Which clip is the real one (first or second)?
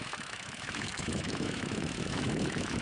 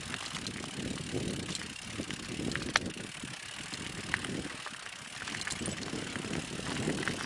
second